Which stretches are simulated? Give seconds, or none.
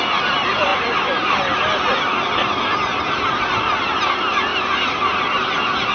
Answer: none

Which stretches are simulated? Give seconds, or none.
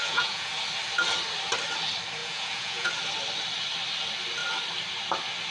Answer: 0.0-0.5 (vocoder, Vocos); 2.2-2.9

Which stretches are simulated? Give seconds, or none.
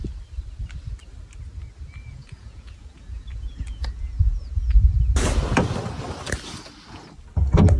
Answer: 2.1-5.0 (vocoder, Vocos)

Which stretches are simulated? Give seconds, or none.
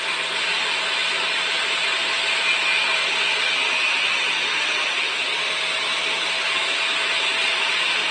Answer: none